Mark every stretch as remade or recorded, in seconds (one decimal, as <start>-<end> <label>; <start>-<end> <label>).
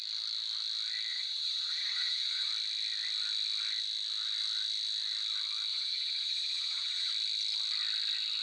0.0-1.1 recorded; 1.1-2.5 remade; 2.5-5.7 recorded; 5.7-7.1 remade; 7.1-8.4 recorded